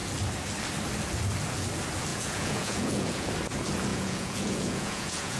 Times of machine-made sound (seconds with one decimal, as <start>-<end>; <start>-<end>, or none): 2.1-3.3; 3.9-5.4

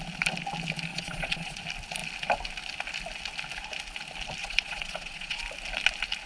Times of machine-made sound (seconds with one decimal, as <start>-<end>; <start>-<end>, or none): 0.9-1.6; 4.4-5.4

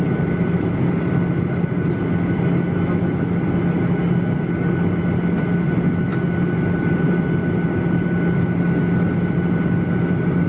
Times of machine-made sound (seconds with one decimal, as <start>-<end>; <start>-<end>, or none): none

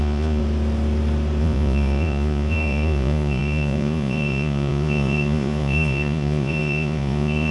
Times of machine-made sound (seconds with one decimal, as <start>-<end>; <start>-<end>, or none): 0.0-0.4; 1.4-7.5

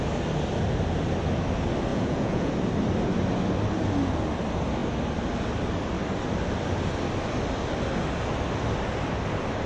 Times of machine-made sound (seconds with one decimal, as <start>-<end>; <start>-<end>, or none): 1.9-2.5

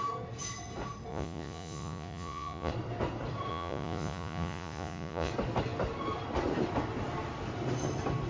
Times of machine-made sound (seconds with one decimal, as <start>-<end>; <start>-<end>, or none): 1.1-2.7; 3.5-5.3